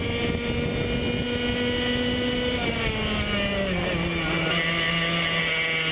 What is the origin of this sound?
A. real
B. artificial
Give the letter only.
A